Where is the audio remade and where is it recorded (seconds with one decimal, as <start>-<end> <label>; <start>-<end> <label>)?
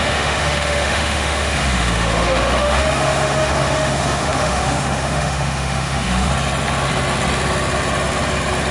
0.0-6.3 remade; 6.3-8.7 recorded